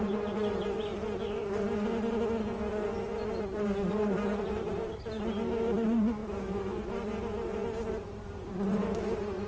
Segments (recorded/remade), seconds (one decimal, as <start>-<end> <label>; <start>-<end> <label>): 0.0-0.9 remade; 0.9-3.4 recorded; 3.4-9.5 remade